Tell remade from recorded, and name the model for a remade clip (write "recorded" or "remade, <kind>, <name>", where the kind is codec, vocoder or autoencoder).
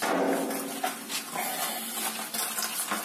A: recorded